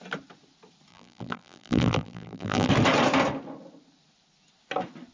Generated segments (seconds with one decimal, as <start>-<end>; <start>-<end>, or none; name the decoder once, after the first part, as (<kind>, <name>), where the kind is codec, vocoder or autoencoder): 0.9-2.7 (vocoder, BigVGAN v2)